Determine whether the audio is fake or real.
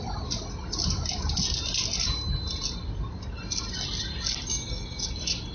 real